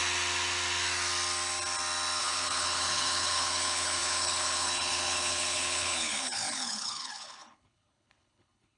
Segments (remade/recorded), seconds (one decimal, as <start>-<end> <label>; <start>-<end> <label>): 0.0-2.2 recorded; 2.2-8.8 remade